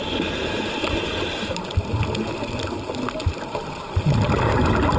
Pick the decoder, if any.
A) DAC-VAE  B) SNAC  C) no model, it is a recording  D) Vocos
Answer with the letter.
C